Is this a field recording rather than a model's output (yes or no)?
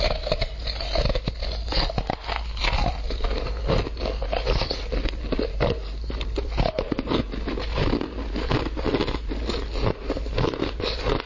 yes